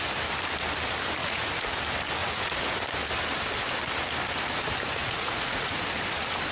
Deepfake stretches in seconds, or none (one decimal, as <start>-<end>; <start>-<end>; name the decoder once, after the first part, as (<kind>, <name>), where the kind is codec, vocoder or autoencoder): 1.2-1.7 (vocoder, Vocos); 2.2-2.8; 5.0-5.8